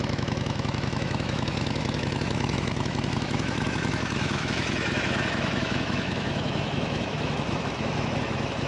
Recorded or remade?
remade